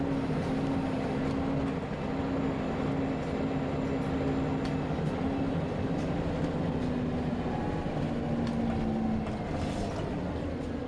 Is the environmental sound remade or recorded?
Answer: recorded